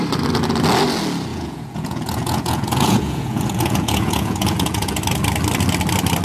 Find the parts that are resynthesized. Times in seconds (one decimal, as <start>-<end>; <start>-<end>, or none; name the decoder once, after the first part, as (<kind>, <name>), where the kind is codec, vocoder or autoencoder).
1.3-5.0 (vocoder, Vocos)